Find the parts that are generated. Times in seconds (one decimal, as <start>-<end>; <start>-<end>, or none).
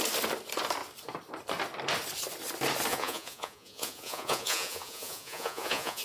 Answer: 2.9-6.0